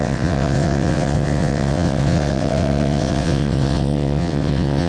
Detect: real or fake fake